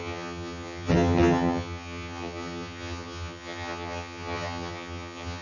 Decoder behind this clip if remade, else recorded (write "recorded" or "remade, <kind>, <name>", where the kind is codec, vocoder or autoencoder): remade, vocoder, HiFi-GAN